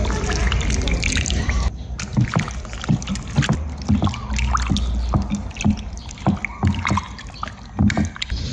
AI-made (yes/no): no